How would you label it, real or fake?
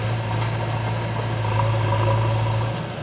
real